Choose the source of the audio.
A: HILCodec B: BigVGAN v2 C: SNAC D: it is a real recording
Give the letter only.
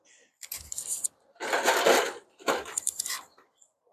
B